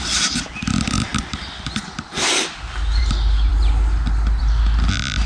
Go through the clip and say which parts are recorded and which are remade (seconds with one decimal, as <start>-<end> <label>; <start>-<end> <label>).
0.0-5.3 recorded